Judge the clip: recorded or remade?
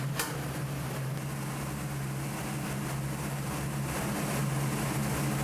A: recorded